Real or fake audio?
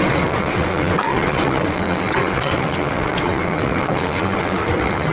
fake